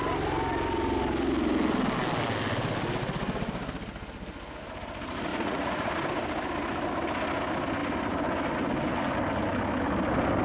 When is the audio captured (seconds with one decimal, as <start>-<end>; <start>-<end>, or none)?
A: 0.0-5.3; 5.9-10.4